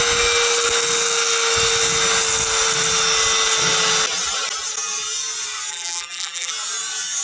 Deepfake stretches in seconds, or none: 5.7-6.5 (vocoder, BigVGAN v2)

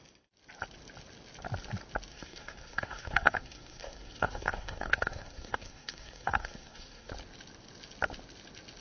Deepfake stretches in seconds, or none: 2.1-7.1 (codec, SNAC)

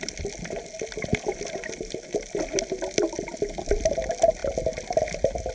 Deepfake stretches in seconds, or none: none